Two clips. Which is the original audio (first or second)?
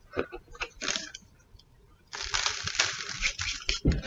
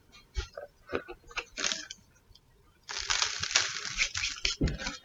second